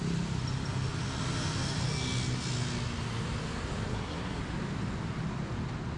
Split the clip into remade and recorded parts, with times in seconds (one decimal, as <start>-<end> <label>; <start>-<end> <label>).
0.0-3.9 recorded; 3.9-4.4 remade; 4.4-6.0 recorded